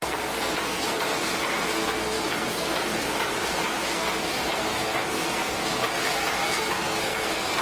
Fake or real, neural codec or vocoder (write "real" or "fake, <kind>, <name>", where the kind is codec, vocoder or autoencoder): fake, codec, SNAC